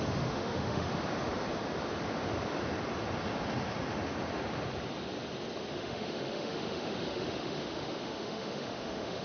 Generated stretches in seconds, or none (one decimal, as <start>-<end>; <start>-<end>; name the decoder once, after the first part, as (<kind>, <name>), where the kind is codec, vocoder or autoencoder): 0.0-0.9 (autoencoder, DAC-VAE); 5.7-9.2